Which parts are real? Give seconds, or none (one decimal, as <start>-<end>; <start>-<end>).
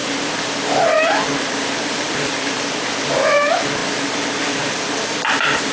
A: 0.0-0.5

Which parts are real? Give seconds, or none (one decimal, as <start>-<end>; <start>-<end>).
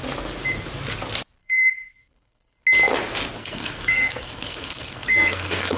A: 0.0-1.4; 2.6-3.4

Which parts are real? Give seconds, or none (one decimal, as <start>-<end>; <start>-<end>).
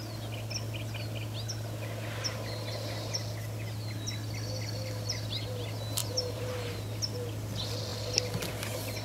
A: 0.0-6.0; 6.9-9.0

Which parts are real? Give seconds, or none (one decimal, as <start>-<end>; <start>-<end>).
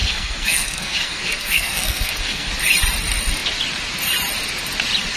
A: 2.5-5.2